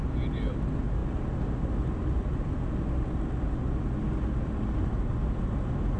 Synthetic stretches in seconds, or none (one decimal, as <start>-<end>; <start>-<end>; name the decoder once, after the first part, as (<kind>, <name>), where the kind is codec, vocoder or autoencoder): none